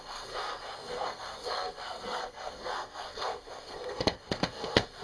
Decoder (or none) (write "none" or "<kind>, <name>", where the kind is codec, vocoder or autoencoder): codec, SNAC